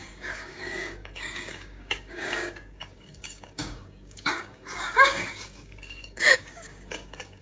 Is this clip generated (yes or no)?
yes